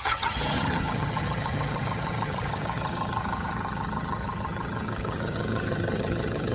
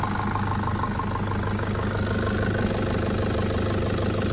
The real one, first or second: second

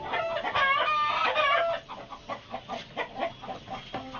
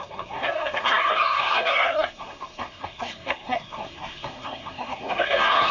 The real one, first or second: first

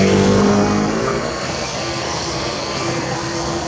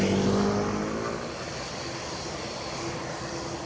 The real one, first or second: second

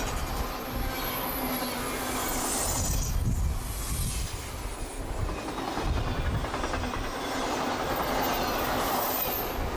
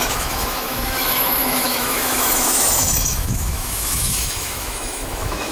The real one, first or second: first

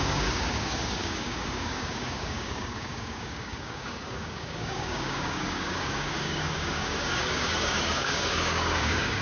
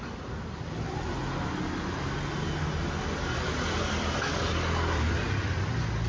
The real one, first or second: second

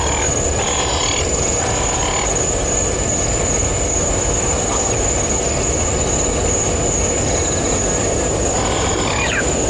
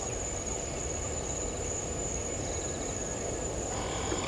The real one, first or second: first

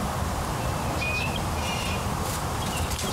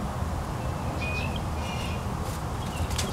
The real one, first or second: second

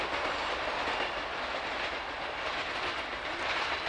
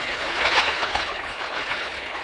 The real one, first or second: first